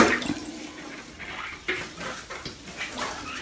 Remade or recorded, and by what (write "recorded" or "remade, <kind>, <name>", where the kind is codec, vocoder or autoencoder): recorded